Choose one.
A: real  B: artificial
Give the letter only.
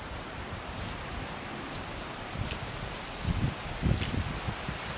A